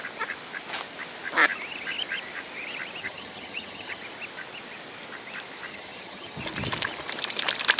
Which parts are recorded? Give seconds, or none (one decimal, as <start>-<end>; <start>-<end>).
0.0-3.0; 4.0-5.7; 6.4-7.8